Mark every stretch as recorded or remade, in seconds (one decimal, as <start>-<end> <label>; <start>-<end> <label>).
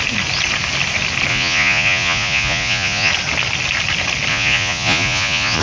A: 0.0-1.3 recorded; 1.3-3.1 remade; 3.1-4.3 recorded; 4.3-5.6 remade